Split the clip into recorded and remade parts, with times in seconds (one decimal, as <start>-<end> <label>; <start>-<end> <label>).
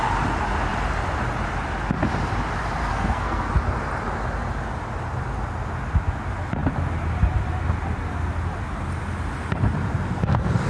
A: 0.0-2.8 recorded; 2.8-3.5 remade; 3.5-10.7 recorded